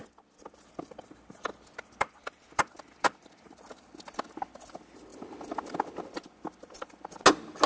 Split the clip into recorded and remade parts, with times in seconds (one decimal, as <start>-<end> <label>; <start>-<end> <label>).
0.0-3.5 remade; 3.5-7.7 recorded